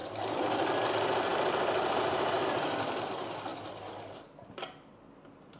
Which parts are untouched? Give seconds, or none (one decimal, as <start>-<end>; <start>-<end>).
0.0-1.3; 2.4-5.6